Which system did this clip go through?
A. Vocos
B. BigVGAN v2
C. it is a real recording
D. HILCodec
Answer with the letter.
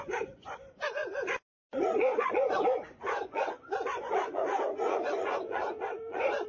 A